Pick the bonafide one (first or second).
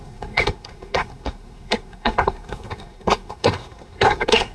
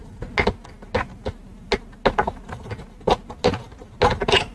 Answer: second